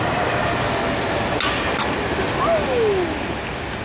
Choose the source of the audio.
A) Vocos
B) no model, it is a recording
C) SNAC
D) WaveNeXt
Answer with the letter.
B